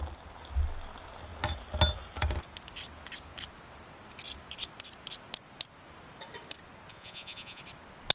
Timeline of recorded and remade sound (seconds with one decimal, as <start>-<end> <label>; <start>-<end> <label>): 0.0-6.9 recorded; 6.9-7.6 remade; 7.6-8.1 recorded